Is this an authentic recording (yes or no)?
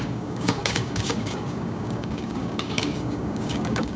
no